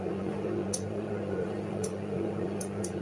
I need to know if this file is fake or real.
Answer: fake